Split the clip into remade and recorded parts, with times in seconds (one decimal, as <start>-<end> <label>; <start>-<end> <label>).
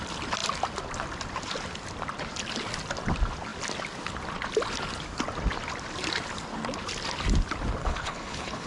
0.0-7.8 recorded; 7.8-8.7 remade